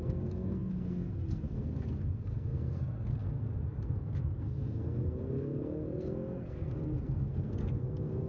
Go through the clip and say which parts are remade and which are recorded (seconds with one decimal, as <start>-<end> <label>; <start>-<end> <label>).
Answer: 0.0-8.3 remade